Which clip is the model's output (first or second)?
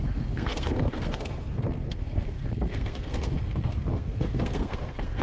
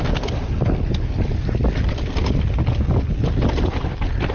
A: first